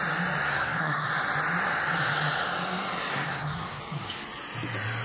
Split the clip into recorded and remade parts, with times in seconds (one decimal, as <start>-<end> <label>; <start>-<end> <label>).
0.0-0.5 recorded; 0.5-1.1 remade; 1.1-3.1 recorded; 3.1-3.8 remade; 3.8-5.0 recorded